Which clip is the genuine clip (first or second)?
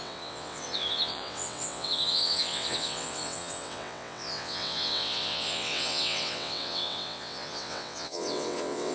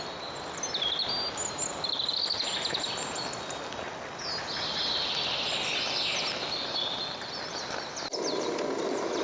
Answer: second